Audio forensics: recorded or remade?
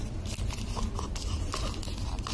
recorded